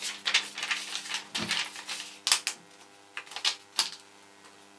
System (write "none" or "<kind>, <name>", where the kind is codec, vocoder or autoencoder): none